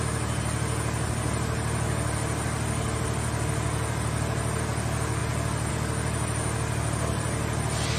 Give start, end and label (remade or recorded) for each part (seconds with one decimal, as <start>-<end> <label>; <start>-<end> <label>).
0.0-8.0 recorded